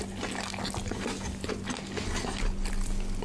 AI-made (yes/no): no